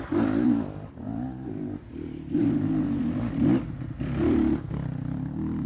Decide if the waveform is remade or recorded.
remade